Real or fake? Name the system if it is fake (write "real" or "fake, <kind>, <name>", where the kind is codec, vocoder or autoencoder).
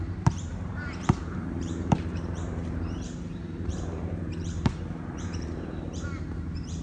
fake, vocoder, BigVGAN v2